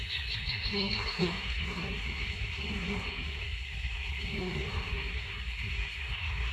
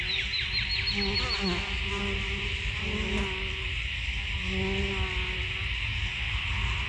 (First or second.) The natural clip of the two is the second